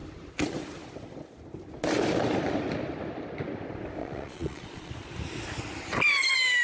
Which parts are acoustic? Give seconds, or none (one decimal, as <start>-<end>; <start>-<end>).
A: 0.0-4.0; 4.9-6.6